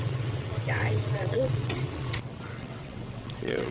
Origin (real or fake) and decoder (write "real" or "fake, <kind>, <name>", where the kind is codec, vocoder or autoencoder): fake, vocoder, WaveNeXt